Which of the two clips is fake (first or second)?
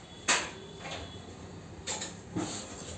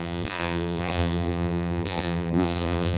second